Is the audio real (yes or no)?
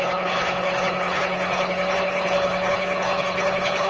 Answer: no